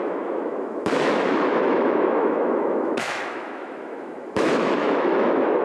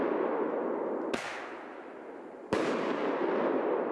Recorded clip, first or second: second